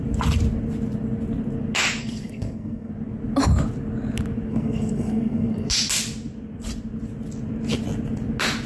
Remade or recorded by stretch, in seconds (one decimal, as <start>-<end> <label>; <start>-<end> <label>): 0.0-2.0 recorded; 2.0-2.9 remade; 2.9-4.5 recorded; 4.5-5.7 remade; 5.7-8.7 recorded